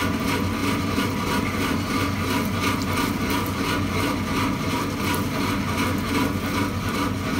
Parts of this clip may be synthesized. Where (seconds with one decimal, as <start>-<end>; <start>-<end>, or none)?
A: none